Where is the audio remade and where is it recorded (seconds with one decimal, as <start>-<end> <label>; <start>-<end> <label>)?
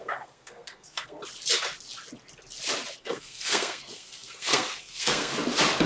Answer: 0.0-1.2 remade; 1.2-3.0 recorded; 3.0-5.3 remade; 5.3-5.9 recorded